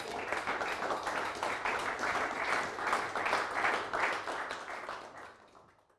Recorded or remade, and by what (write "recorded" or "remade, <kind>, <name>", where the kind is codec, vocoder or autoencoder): recorded